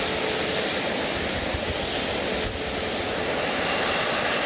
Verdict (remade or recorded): recorded